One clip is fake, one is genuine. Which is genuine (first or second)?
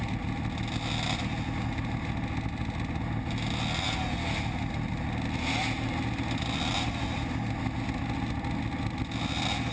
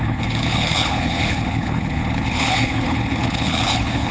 first